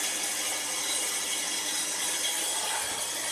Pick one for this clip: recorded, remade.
remade